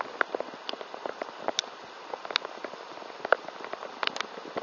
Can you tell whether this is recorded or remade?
recorded